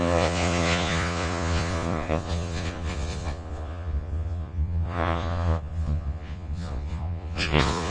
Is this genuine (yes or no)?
no